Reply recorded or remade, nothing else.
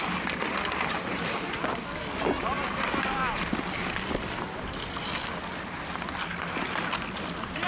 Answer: recorded